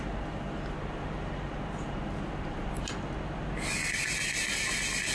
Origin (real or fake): real